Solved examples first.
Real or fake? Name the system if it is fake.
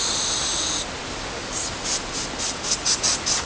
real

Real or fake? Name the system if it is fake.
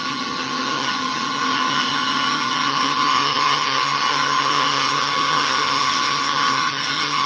fake, vocoder, HiFi-GAN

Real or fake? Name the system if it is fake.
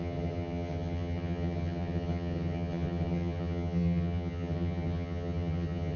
fake, vocoder, HiFi-GAN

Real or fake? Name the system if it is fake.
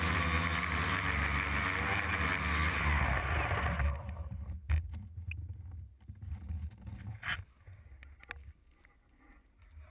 real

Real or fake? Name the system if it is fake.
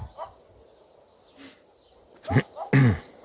real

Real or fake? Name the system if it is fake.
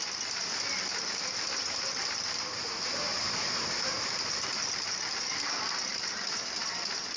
real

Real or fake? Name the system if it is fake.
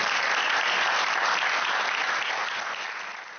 real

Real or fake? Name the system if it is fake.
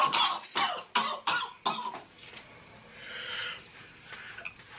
real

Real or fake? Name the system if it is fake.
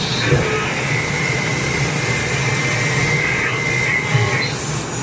real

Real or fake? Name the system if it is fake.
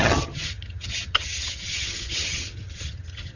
fake, vocoder, HiFi-GAN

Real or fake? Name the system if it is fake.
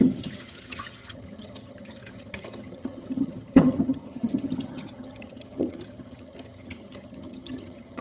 fake, vocoder, HiFi-GAN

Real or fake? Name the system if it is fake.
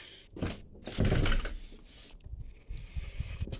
real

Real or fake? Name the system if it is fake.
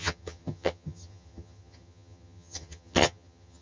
fake, vocoder, HiFi-GAN